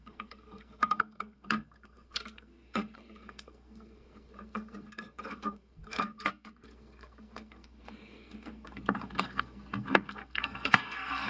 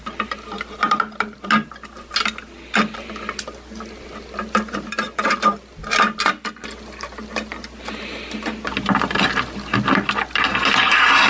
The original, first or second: second